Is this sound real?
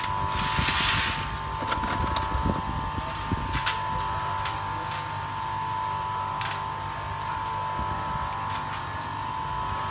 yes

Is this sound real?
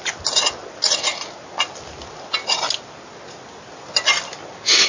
yes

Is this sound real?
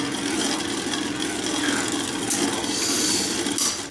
yes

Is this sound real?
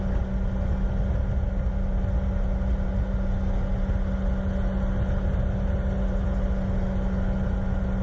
yes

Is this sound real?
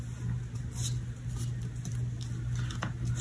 yes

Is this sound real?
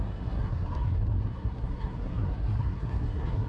no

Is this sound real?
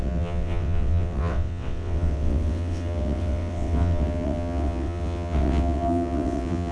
no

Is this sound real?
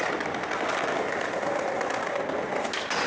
yes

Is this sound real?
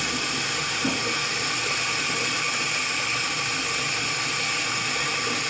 yes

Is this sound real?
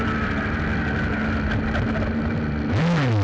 yes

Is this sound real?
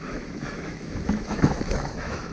no